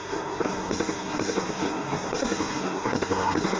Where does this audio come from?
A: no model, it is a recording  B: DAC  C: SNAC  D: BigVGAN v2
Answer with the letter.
C